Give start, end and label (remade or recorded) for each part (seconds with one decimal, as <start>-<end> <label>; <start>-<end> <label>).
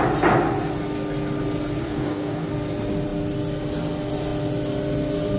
0.0-1.8 recorded; 1.8-2.5 remade; 2.5-5.4 recorded